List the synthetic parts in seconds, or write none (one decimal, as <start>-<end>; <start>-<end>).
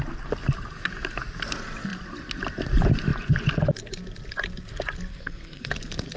5.1-5.7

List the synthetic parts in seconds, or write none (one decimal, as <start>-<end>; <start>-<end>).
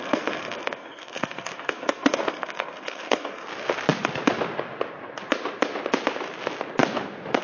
0.0-3.5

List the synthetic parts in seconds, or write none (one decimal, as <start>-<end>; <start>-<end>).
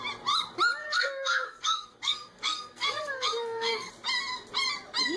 0.8-3.9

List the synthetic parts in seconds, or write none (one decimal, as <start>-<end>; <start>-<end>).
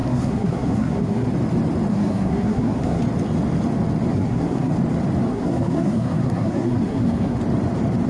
0.0-1.3; 1.9-3.0; 4.1-4.7; 5.3-7.4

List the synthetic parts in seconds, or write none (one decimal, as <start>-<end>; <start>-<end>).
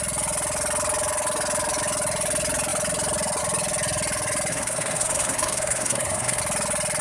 4.5-6.4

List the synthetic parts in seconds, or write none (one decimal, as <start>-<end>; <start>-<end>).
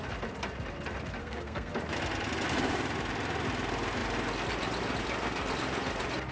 1.2-1.7